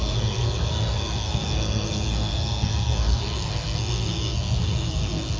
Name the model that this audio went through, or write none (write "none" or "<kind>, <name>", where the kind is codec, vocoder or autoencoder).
codec, SNAC